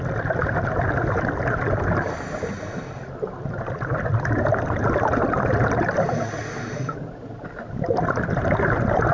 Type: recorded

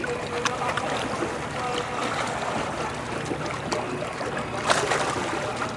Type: recorded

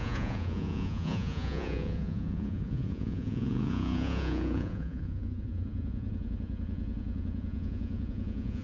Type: remade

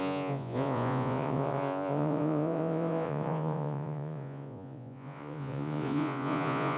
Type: remade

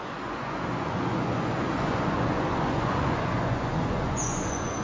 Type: remade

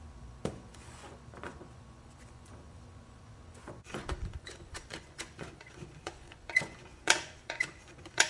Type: remade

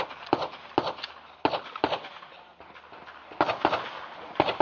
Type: recorded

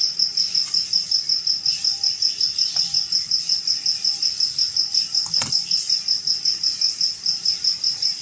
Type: recorded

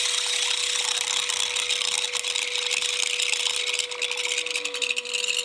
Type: recorded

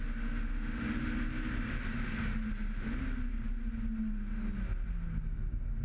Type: recorded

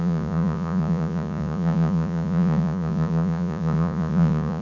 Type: remade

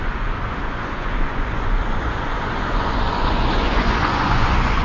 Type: remade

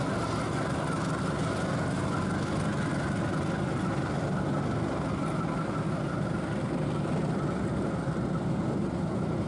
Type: recorded